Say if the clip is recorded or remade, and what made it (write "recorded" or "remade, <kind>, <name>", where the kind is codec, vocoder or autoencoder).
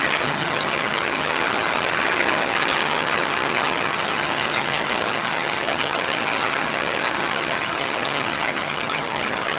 remade, vocoder, HiFi-GAN